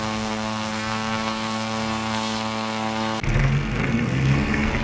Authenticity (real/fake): fake